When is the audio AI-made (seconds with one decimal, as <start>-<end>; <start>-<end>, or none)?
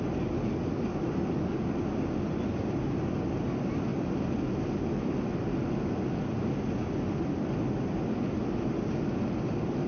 none